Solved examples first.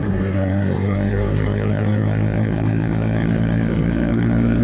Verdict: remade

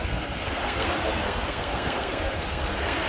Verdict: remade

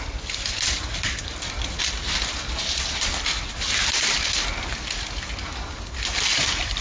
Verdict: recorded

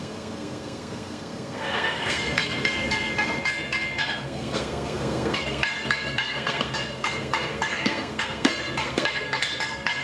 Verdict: remade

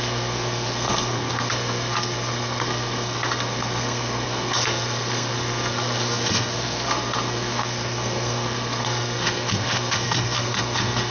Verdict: remade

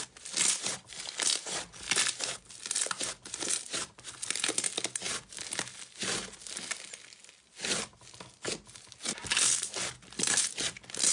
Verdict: recorded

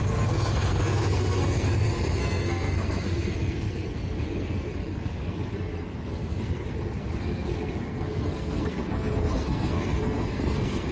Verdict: remade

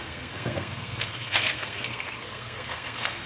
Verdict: remade